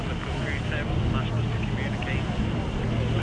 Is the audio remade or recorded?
recorded